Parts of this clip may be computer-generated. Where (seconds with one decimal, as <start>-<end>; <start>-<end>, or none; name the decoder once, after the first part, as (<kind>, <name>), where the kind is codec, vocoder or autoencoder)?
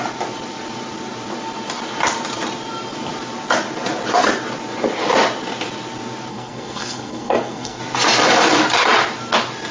6.3-7.8 (codec, SNAC)